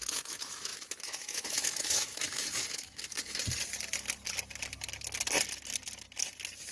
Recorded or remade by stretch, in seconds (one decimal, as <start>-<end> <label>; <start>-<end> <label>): 0.0-3.4 remade; 3.4-6.7 recorded

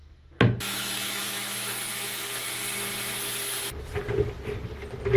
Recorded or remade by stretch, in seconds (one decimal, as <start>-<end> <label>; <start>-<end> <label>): 0.0-2.6 remade; 2.6-5.2 recorded